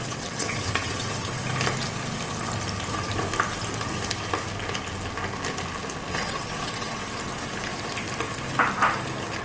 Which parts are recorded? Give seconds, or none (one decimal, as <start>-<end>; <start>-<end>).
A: 1.4-6.1; 7.0-9.4